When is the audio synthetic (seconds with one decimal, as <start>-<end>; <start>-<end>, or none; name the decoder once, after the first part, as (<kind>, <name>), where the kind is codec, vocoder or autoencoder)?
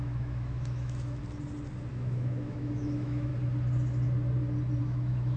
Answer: 0.0-1.2 (autoencoder, DAC-VAE); 1.9-3.3; 4.8-5.4